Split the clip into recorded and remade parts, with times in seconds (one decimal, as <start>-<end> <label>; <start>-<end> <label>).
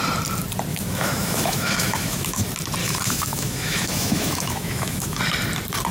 0.0-0.7 recorded; 0.7-2.4 remade; 2.4-2.8 recorded; 2.8-5.2 remade; 5.2-5.9 recorded